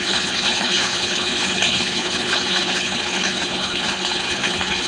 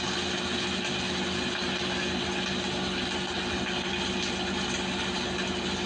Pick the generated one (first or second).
first